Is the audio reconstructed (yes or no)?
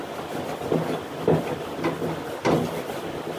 no